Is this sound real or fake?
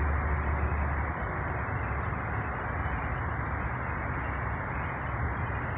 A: real